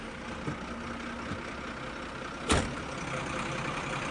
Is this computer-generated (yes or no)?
no